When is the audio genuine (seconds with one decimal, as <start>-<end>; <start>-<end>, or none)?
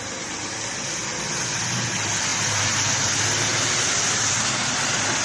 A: 0.0-5.2